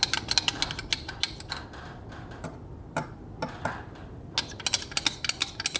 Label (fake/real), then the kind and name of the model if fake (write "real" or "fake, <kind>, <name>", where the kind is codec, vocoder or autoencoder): real